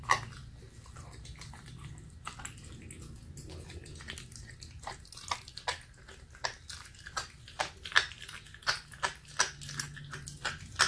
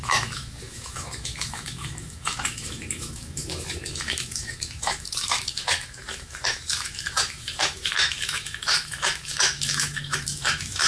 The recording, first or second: first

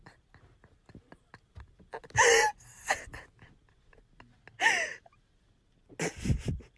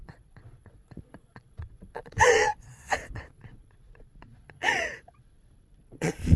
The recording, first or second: first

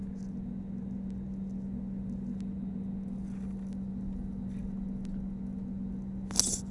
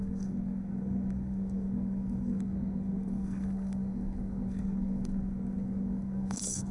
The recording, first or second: first